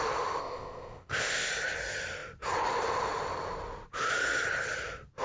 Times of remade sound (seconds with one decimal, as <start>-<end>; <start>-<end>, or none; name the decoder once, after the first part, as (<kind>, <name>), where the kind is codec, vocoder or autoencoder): 0.4-1.5 (codec, ZipCodec)